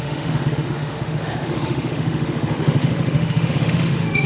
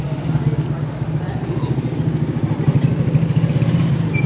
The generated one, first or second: first